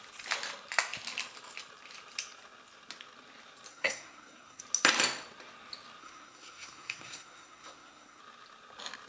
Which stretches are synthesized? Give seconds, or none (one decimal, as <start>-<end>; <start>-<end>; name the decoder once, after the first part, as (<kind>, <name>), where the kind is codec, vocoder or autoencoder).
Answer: 3.7-4.6 (codec, SNAC); 6.0-8.2